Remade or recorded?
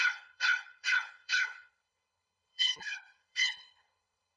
remade